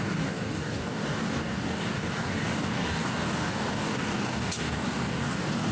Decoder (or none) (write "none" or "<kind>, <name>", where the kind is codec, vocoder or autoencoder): codec, DAC